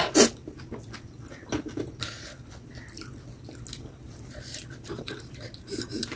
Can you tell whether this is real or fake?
real